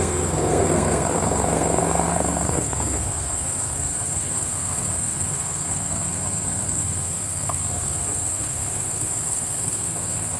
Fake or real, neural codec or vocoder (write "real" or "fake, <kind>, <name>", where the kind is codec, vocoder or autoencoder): fake, codec, SNAC